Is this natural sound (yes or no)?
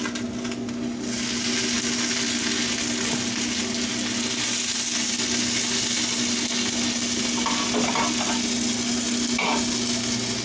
yes